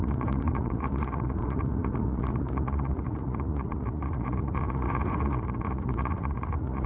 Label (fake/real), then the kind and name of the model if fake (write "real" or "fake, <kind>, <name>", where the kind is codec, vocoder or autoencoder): fake, vocoder, Vocos